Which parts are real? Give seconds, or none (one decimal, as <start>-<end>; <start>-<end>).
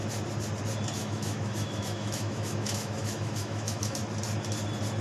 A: 0.0-1.0; 4.0-5.0